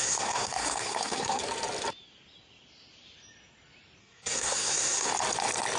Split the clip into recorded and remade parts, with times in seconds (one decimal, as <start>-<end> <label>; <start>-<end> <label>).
0.0-1.4 remade; 1.4-4.0 recorded; 4.0-5.1 remade; 5.1-5.8 recorded